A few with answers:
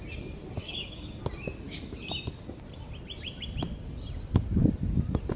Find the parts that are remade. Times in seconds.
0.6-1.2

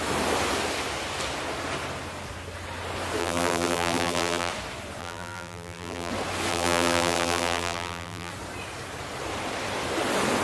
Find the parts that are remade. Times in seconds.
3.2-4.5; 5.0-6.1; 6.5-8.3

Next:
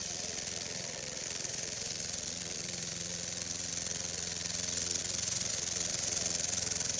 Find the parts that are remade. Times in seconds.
0.0-7.0

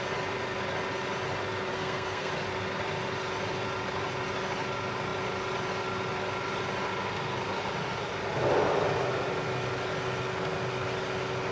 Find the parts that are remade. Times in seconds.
1.7-2.3